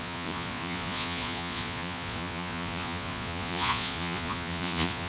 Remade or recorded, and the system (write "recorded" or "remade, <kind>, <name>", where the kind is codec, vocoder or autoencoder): remade, vocoder, Vocos